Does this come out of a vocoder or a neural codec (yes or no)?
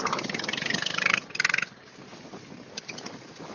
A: no